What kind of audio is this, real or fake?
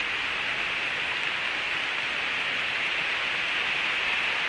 real